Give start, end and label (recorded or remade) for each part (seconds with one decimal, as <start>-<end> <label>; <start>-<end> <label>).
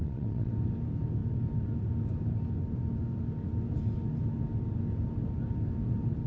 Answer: 0.0-0.5 remade; 0.5-6.3 recorded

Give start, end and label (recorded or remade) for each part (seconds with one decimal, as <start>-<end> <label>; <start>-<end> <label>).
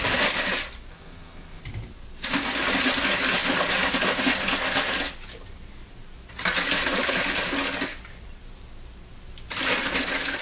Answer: 0.0-0.9 recorded; 0.9-1.6 remade; 1.6-10.4 recorded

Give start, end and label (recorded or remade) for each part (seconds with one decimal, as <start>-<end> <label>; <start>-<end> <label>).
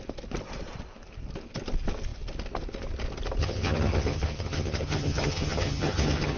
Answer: 0.0-3.4 recorded; 3.4-6.4 remade